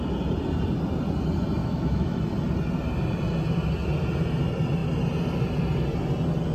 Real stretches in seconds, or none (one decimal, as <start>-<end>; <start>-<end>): 0.0-1.6; 2.2-6.5